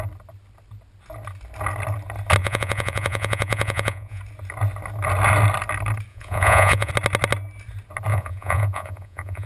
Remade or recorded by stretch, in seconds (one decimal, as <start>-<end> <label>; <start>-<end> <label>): 0.0-2.4 recorded; 2.4-4.2 remade; 4.2-6.1 recorded; 6.1-6.9 remade; 6.9-8.1 recorded; 8.1-9.5 remade